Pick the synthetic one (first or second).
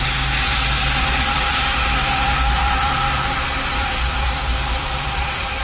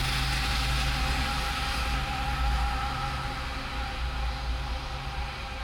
first